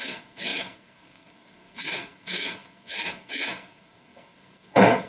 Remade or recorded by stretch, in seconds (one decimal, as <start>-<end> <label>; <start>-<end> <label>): 0.0-5.1 remade